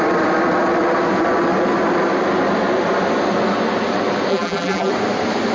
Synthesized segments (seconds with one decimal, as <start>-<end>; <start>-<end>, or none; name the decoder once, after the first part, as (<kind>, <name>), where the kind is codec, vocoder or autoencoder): 4.3-4.9 (vocoder, BigVGAN v2)